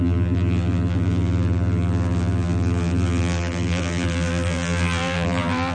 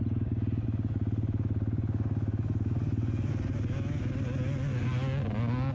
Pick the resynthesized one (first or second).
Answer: first